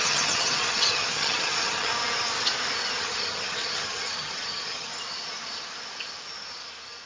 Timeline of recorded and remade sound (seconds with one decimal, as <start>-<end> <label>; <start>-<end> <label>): 0.0-1.9 remade; 1.9-3.0 recorded; 3.0-4.9 remade; 4.9-7.1 recorded